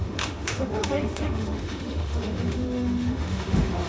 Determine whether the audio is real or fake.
fake